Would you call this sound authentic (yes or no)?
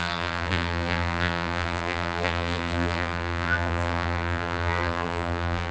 no